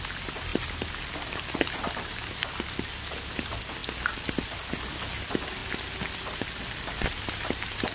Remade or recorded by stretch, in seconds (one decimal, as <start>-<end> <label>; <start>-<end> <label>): 0.0-7.9 recorded